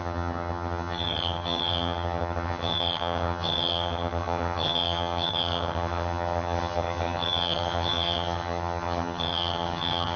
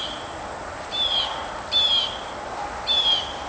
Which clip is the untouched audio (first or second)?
second